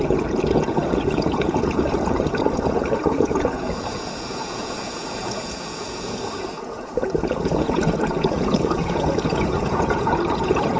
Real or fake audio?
fake